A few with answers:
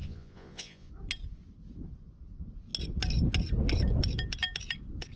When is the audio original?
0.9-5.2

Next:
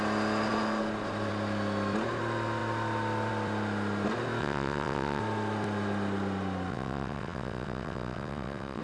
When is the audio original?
0.0-4.4; 5.2-6.7

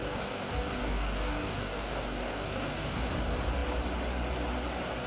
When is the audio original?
3.1-5.1